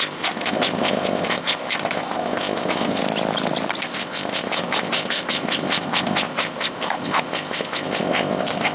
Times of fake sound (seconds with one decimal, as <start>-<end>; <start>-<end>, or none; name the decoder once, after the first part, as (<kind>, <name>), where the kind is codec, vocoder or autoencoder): 0.0-3.0 (codec, ZipCodec); 3.8-8.7